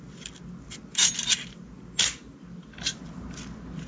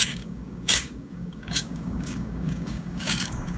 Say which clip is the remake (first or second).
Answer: second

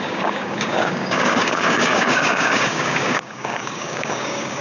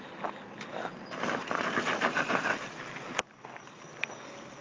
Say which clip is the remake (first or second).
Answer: first